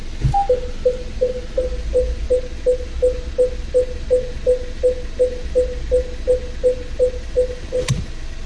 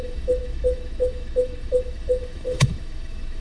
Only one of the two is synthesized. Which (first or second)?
second